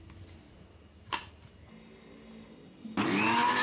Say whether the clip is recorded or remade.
recorded